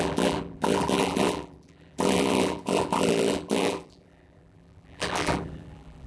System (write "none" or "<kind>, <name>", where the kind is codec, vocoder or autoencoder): vocoder, BigVGAN v2